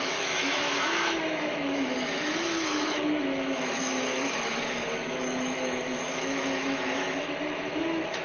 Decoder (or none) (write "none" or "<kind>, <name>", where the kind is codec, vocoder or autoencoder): autoencoder, DAC-VAE